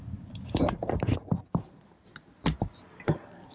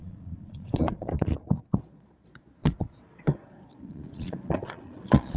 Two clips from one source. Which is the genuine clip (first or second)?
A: first